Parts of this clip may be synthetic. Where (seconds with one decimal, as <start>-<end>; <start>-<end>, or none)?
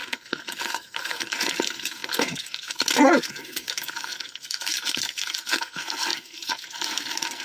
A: 0.0-7.4